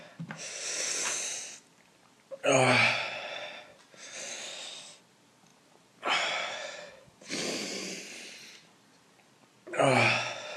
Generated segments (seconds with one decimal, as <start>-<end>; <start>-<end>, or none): none